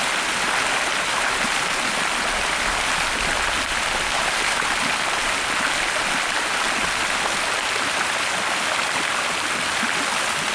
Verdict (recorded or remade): recorded